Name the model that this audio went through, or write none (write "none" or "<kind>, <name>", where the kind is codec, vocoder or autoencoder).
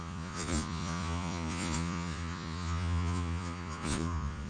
vocoder, Vocos